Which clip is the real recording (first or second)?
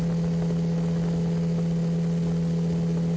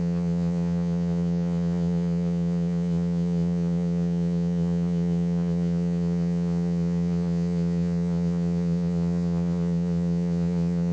first